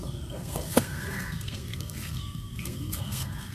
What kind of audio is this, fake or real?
fake